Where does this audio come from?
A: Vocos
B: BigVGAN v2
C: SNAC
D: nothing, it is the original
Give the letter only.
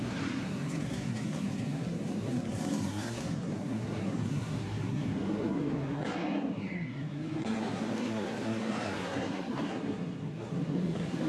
C